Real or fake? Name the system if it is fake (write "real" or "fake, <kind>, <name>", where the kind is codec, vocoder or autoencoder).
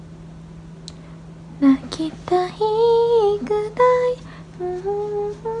real